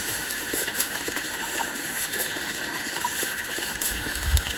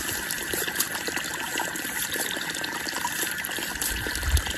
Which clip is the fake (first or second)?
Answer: first